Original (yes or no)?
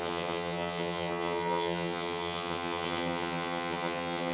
no